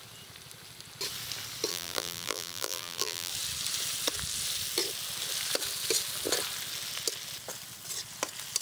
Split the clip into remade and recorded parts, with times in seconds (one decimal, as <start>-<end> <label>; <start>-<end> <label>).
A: 0.0-1.7 recorded; 1.7-3.3 remade; 3.3-8.6 recorded